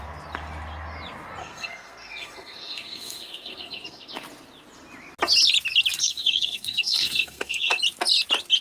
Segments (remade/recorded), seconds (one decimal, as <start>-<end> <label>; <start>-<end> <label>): 0.0-1.4 recorded; 1.4-4.1 remade; 4.1-6.0 recorded; 6.0-7.8 remade; 7.8-8.6 recorded